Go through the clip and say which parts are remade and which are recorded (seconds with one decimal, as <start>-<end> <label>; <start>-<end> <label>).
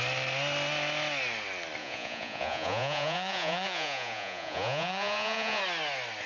0.0-1.8 recorded; 1.8-5.6 remade; 5.6-6.3 recorded